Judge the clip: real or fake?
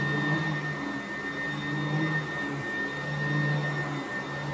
real